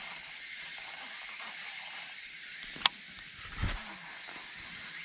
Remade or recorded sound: recorded